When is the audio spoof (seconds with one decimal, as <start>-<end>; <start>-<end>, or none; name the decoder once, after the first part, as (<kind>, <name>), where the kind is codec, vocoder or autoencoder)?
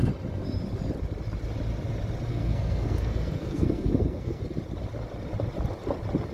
2.3-4.4 (codec, SNAC)